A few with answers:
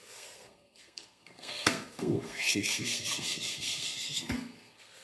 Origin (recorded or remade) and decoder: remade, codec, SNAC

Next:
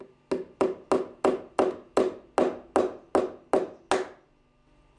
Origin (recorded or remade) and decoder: recorded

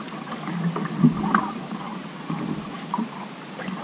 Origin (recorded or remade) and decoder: recorded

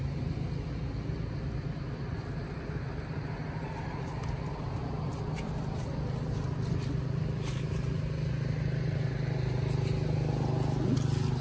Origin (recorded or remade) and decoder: recorded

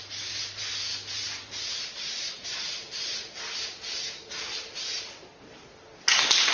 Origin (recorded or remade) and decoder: recorded